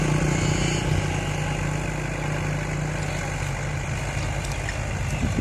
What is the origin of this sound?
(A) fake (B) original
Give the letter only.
B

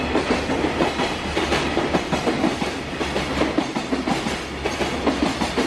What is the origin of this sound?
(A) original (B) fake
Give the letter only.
A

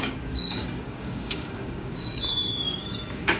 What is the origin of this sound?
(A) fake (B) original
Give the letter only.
A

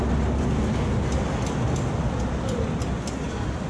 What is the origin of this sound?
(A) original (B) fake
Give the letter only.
A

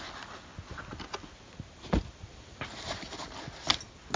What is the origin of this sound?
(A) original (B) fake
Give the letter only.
A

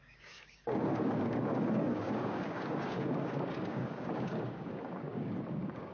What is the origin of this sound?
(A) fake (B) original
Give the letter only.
A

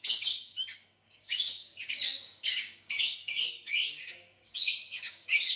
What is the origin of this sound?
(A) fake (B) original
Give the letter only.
A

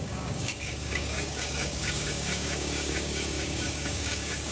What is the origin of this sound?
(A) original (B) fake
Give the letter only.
B